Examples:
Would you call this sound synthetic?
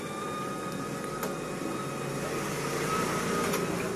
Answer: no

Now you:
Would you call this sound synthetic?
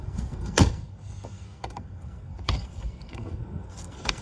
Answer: yes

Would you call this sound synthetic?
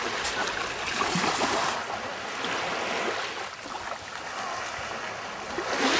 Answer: no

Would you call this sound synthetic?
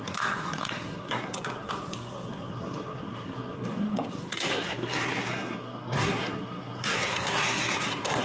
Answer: yes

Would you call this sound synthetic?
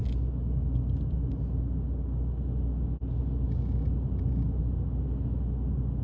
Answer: no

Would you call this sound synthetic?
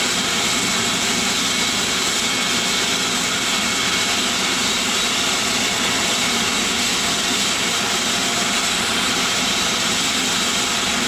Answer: no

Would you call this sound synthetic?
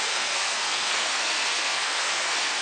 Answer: yes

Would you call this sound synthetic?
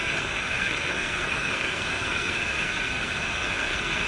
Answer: yes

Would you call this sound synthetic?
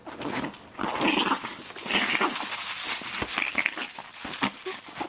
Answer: no